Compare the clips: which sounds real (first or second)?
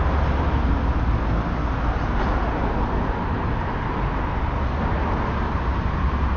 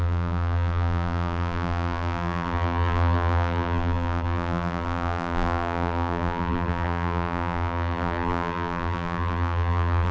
first